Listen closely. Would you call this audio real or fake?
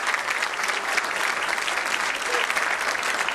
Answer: fake